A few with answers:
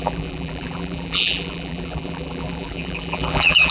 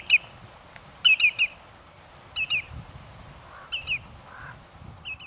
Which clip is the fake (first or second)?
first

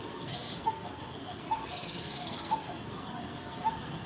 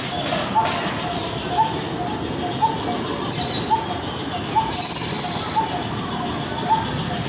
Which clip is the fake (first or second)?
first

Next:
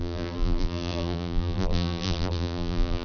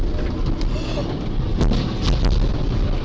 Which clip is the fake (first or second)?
first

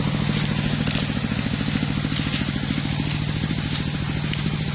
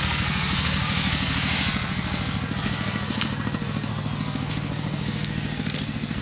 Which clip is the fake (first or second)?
second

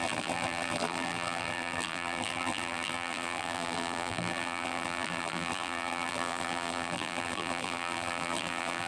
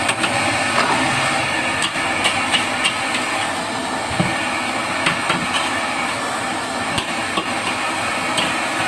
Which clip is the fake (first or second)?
first